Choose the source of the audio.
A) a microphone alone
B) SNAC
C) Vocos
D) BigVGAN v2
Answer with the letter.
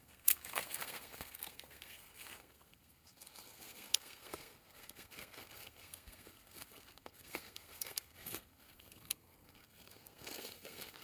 B